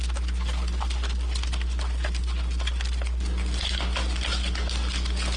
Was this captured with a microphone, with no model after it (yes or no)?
yes